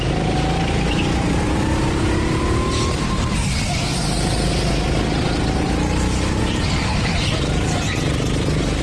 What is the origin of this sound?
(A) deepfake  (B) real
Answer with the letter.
B